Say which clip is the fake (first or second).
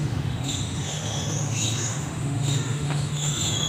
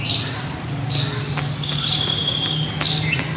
first